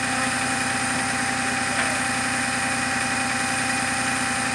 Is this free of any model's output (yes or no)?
yes